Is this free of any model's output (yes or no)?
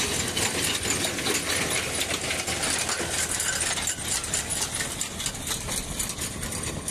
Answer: yes